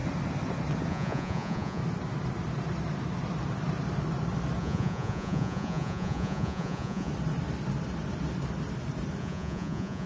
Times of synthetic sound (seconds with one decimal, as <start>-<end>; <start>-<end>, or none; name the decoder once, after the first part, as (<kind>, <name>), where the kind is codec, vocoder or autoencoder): 0.9-1.8 (vocoder, Vocos); 4.6-7.1; 9.2-10.1